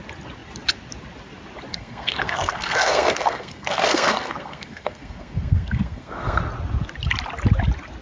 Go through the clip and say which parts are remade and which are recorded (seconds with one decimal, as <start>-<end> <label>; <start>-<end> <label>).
0.0-1.7 recorded; 1.7-6.4 remade; 6.4-8.0 recorded